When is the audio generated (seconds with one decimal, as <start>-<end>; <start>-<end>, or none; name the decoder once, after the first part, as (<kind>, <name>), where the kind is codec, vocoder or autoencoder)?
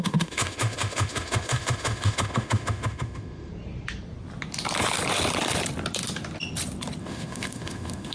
0.0-3.5 (autoencoder, DAC-VAE); 7.0-8.1